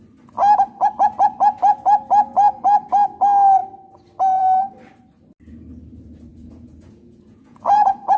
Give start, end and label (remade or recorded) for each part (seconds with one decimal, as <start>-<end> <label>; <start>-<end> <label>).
0.0-6.3 recorded; 6.3-8.2 remade